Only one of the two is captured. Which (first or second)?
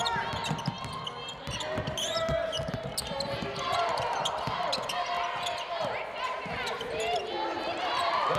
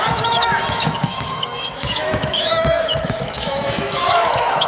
first